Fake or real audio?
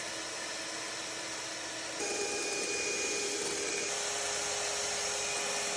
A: real